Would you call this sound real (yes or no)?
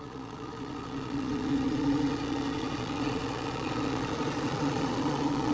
no